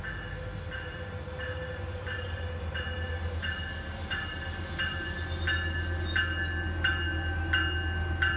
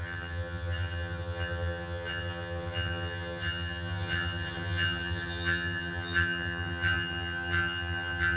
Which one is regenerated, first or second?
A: second